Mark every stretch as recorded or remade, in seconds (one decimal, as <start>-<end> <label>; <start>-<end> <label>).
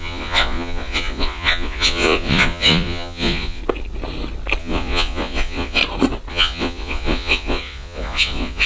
0.0-3.6 remade; 3.6-4.6 recorded; 4.6-5.8 remade; 5.8-6.3 recorded; 6.3-8.7 remade